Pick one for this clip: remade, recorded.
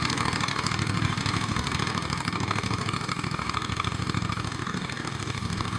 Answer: remade